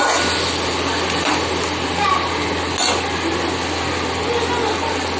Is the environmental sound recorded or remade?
recorded